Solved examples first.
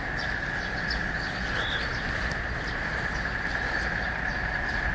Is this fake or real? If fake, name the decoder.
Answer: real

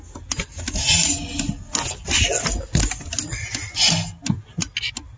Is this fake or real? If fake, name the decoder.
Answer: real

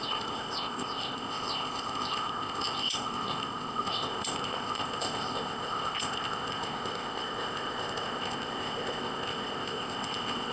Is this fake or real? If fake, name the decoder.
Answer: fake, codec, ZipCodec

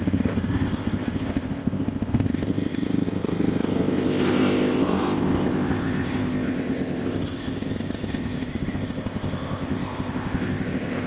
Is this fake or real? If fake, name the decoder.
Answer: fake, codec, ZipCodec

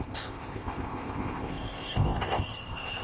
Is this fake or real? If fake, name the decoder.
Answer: fake, codec, ZipCodec